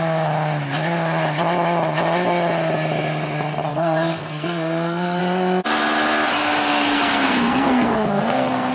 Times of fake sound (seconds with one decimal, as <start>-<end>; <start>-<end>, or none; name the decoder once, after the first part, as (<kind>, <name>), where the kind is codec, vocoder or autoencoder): 3.7-5.2 (codec, SNAC); 6.7-8.7